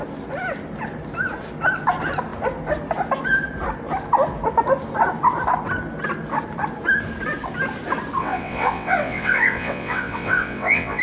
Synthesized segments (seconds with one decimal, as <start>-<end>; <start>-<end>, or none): 8.2-11.0